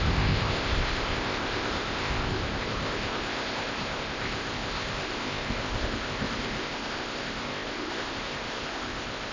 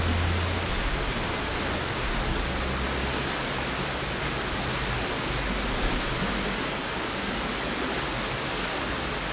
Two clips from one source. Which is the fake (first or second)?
first